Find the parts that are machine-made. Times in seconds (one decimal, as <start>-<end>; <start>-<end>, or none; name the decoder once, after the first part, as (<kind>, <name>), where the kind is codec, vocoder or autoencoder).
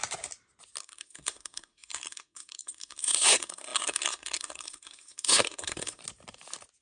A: 0.8-6.0 (codec, SNAC)